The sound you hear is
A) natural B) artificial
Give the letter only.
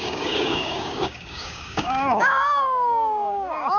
B